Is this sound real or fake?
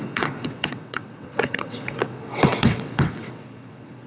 fake